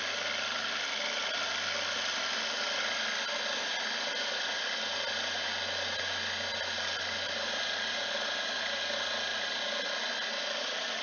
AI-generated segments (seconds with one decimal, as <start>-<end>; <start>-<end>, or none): none